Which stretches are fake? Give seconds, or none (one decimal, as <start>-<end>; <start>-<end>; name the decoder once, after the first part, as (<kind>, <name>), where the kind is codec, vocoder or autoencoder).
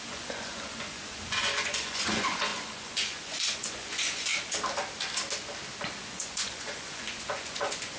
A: 0.0-4.3 (vocoder, Vocos); 6.0-8.0